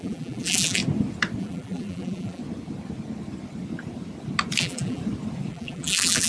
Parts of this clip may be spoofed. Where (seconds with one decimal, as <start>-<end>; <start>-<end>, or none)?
0.0-0.8; 1.4-2.4; 4.6-5.0; 5.5-6.3